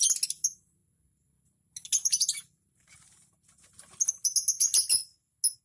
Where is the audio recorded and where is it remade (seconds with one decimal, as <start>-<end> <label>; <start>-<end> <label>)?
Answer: 0.0-5.6 recorded